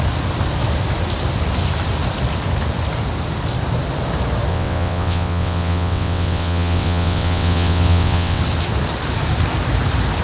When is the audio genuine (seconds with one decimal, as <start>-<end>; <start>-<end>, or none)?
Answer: 0.0-4.5; 8.4-10.2